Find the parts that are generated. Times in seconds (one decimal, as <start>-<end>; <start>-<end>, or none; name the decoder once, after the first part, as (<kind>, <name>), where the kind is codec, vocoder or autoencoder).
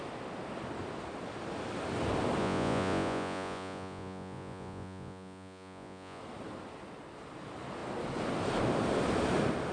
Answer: 2.4-6.2 (vocoder, Vocos)